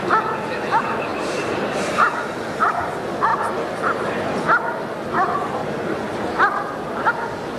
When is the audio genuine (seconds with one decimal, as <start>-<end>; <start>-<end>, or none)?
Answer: 0.0-1.1; 2.2-7.6